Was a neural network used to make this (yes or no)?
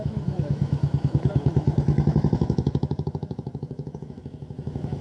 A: yes